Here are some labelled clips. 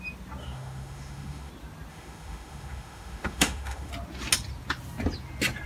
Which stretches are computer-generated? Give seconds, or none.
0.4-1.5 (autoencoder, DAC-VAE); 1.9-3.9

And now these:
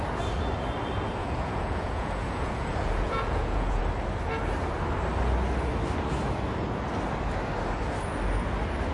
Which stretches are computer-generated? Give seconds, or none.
1.2-3.8 (vocoder, Vocos)

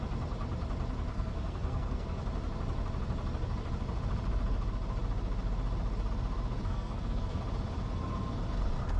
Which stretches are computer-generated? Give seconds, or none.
1.1-2.2 (codec, SNAC); 6.6-7.4

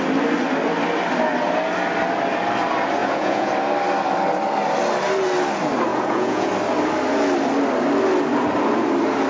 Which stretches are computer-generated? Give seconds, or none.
3.0-3.5 (vocoder, Vocos); 5.9-6.5